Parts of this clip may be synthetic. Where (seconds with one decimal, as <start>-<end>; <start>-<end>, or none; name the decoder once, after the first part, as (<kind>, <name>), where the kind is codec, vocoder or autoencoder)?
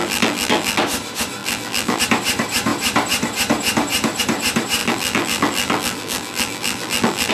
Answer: 0.0-0.8 (vocoder, BigVGAN v2); 1.4-2.0; 4.8-7.3